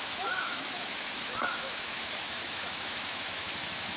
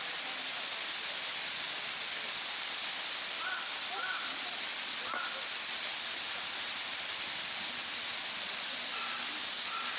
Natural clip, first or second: second